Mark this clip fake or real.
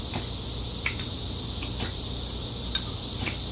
real